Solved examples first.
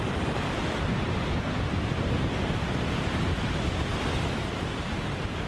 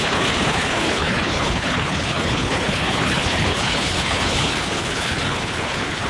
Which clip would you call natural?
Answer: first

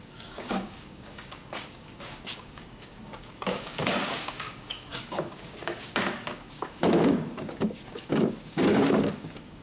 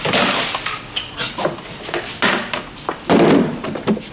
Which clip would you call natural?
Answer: second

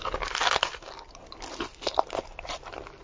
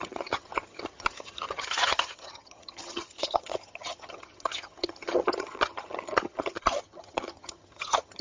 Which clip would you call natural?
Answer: first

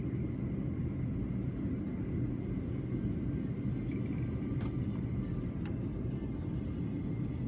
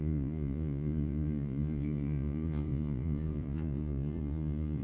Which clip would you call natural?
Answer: first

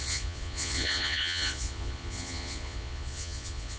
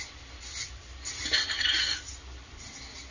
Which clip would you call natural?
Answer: second